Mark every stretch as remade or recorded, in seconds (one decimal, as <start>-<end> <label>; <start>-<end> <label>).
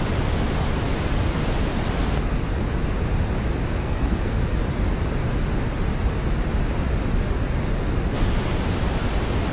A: 0.0-3.8 recorded; 3.8-4.4 remade; 4.4-9.5 recorded